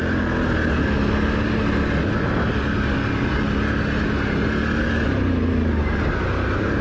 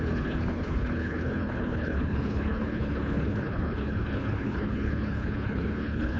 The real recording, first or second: first